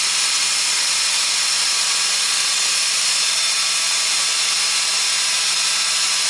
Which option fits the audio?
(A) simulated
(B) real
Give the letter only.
A